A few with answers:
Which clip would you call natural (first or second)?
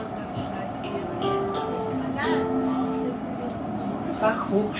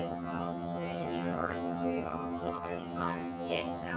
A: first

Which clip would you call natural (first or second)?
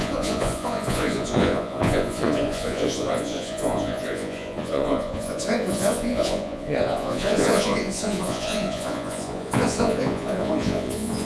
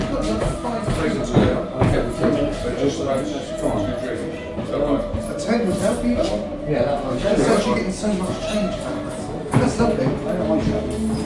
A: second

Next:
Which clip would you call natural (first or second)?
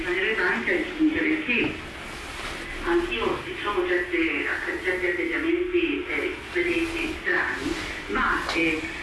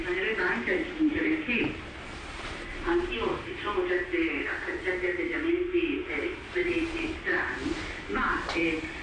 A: first